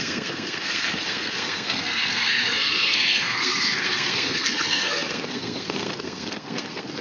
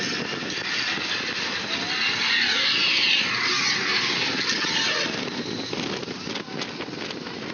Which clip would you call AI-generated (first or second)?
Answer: first